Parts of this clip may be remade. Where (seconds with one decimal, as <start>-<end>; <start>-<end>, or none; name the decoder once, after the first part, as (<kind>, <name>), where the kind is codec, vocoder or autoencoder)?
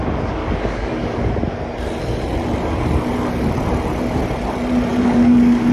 0.4-1.3 (codec, DAC); 4.9-5.7